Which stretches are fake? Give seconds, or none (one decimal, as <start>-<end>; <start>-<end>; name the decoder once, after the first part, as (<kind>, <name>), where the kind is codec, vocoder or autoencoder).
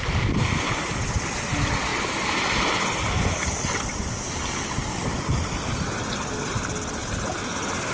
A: none